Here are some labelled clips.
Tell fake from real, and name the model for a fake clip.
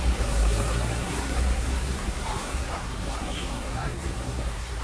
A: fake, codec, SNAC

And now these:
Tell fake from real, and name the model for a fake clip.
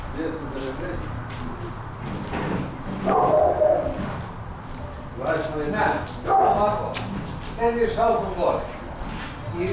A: real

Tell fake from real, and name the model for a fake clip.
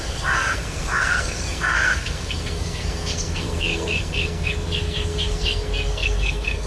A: fake, codec, SNAC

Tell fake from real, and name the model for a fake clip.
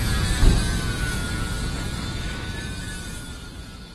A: real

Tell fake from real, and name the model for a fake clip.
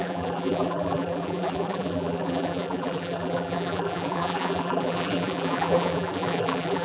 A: fake, vocoder, BigVGAN v2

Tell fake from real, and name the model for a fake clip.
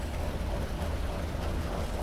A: real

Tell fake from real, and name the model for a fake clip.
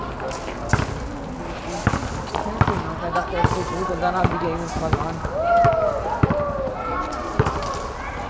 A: real